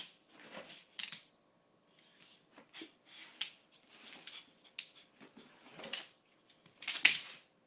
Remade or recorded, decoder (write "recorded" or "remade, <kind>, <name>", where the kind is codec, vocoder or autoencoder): recorded